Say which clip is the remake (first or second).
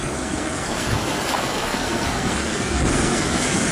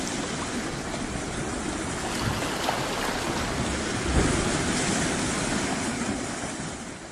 first